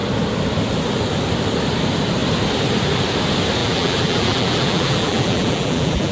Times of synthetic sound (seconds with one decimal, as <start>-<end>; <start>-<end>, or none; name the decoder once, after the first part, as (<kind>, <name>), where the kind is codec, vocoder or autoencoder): 3.6-6.1 (vocoder, BigVGAN v2)

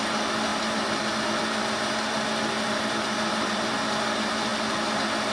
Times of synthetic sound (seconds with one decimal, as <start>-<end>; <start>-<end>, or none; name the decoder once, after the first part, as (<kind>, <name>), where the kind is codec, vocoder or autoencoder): none

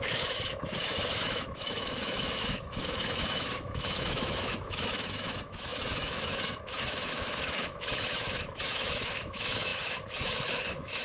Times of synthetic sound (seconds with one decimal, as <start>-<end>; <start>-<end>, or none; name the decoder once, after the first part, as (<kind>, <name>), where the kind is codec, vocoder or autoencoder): 0.0-11.0 (autoencoder, DAC-VAE)

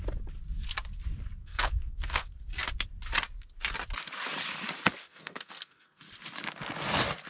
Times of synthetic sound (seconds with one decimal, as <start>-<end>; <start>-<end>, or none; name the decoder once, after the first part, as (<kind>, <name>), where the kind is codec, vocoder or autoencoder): 1.4-2.3 (codec, SNAC); 5.0-6.0

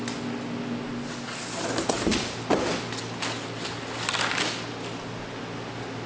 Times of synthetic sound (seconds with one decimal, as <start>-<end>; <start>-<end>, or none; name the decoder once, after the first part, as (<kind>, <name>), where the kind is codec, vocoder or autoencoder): none

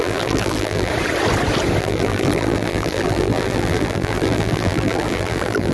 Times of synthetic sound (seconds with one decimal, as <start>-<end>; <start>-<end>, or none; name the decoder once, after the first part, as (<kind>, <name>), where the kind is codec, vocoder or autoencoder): 0.0-0.9 (vocoder, BigVGAN v2); 1.8-5.7

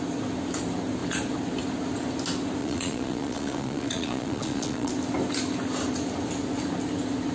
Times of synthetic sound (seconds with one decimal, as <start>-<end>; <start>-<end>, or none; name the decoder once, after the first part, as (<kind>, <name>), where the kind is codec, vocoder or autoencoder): 2.6-4.9 (vocoder, Vocos)

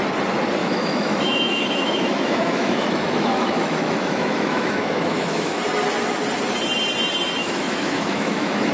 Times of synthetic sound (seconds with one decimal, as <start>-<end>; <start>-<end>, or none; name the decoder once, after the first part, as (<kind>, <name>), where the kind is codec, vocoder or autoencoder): 0.6-5.6 (autoencoder, DAC-VAE); 7.4-8.7